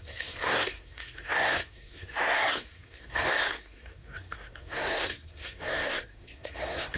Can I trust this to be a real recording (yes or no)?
no